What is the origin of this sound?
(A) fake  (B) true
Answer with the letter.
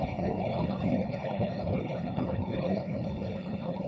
A